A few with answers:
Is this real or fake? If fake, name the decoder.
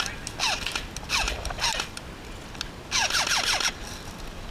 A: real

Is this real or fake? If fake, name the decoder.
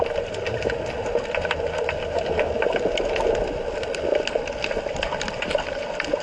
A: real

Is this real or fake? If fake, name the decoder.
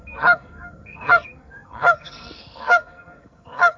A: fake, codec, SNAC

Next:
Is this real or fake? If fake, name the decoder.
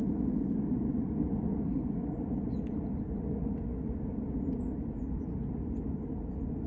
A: real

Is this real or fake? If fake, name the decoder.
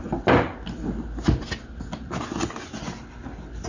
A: real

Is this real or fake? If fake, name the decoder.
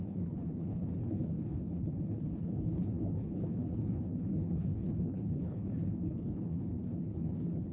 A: fake, codec, HILCodec